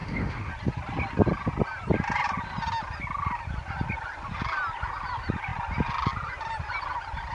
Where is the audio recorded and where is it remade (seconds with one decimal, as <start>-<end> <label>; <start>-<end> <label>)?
0.0-0.5 remade; 0.5-7.3 recorded